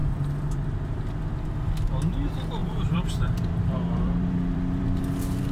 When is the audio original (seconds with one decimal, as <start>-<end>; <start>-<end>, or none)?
1.9-2.6; 5.0-5.5